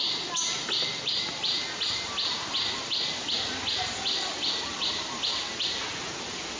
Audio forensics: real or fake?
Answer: real